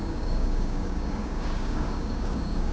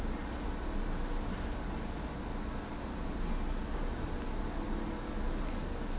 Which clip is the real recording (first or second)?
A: second